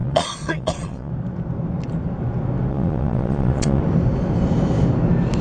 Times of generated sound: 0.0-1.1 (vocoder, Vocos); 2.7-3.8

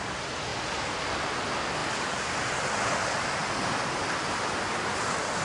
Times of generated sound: 1.8-2.8 (vocoder, BigVGAN v2); 3.4-4.7

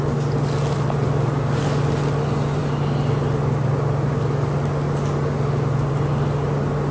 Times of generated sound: none

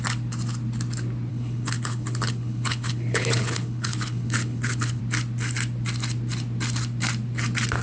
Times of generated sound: 1.3-5.0 (codec, HILCodec)

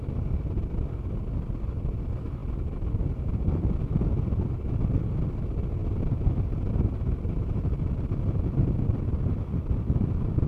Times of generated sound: 3.9-4.8 (vocoder, BigVGAN v2); 5.8-7.8

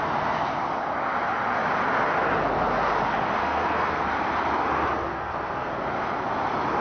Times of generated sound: 3.4-4.0 (codec, SNAC); 5.1-5.7